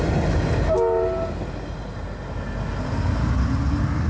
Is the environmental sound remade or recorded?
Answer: recorded